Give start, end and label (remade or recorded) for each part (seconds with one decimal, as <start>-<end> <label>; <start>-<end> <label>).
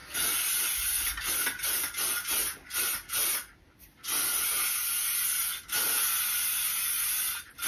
0.0-7.7 recorded